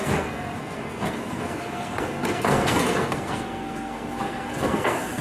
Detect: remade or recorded remade